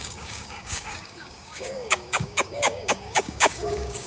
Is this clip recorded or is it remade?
remade